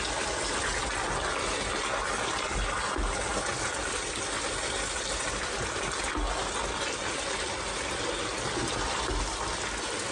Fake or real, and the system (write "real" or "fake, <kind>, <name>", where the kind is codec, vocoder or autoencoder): real